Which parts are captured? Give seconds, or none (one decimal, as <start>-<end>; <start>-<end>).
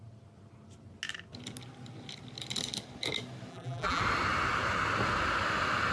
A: 0.0-3.5; 4.0-5.9